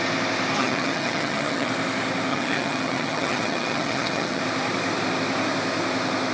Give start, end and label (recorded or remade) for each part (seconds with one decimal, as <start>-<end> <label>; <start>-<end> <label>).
0.0-0.6 recorded; 0.6-1.7 remade; 1.7-2.3 recorded; 2.3-4.4 remade; 4.4-6.3 recorded